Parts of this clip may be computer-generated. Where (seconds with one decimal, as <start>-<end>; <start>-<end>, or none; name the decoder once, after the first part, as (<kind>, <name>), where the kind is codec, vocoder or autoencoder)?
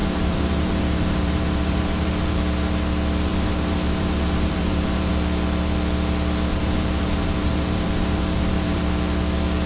0.0-2.4 (vocoder, BigVGAN v2); 3.3-5.1; 6.5-8.8